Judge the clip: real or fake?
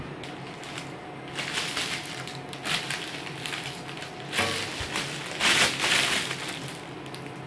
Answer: real